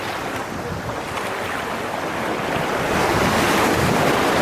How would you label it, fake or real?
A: real